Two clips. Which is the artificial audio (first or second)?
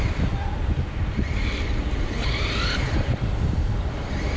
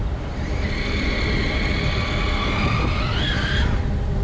first